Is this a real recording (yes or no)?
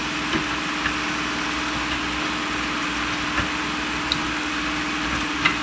yes